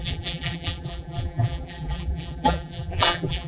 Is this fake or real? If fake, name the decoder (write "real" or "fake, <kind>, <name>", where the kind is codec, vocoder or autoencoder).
fake, vocoder, BigVGAN v2